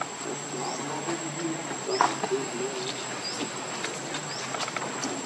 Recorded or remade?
recorded